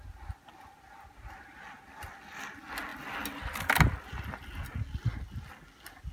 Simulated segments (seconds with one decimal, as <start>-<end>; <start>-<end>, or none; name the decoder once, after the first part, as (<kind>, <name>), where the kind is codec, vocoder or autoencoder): none

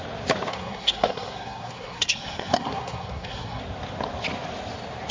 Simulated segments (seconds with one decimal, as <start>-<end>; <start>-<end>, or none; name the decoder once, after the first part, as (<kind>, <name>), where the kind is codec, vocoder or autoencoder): 0.5-3.6 (codec, SNAC)

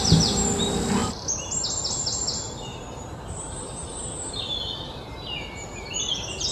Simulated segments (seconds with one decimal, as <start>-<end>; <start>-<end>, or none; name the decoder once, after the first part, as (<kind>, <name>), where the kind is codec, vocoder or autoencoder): 1.0-1.6 (vocoder, BigVGAN v2); 2.7-4.3